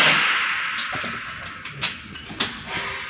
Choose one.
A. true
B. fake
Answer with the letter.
A